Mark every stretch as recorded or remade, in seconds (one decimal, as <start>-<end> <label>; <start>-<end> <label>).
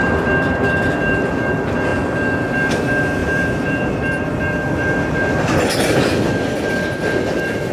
0.0-1.9 remade; 1.9-2.7 recorded; 2.7-7.7 remade